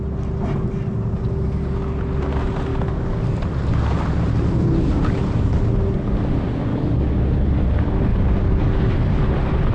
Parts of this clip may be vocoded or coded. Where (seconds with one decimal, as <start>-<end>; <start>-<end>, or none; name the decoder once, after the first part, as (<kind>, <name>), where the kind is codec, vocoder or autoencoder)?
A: 2.7-3.3 (codec, DAC); 6.7-7.2; 8.1-8.9